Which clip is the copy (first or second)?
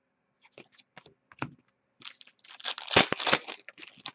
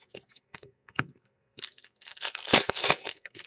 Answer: second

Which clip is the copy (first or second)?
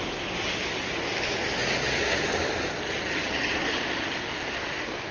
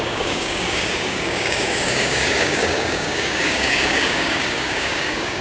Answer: second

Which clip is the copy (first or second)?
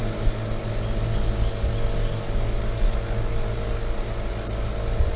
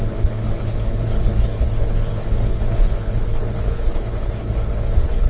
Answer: second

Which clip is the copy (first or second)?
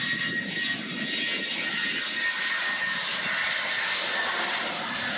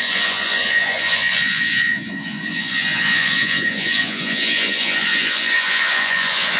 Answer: second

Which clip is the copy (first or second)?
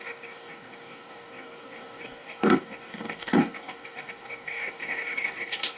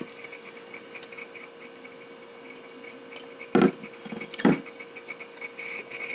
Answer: first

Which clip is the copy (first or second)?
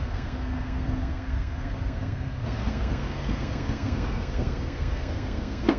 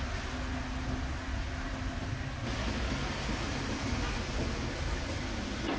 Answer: first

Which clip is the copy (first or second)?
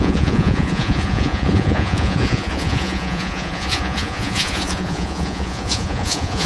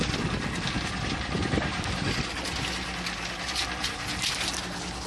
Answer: first